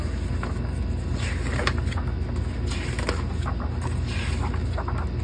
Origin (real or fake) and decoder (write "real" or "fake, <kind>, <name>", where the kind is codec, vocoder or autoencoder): real